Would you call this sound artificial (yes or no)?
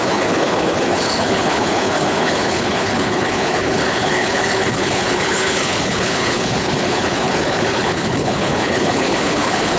yes